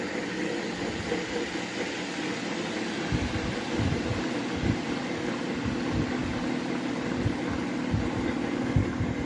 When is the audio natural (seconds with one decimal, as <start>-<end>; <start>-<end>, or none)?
0.0-9.3